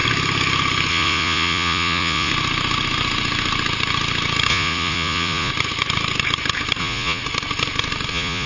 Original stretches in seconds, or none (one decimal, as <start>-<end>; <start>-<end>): 0.0-0.9; 2.3-4.5; 5.5-6.8; 7.2-8.1